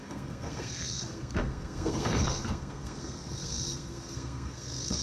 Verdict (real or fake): fake